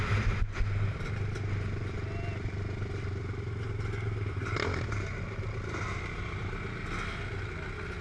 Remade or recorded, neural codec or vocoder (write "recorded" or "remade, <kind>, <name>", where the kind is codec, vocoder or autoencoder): recorded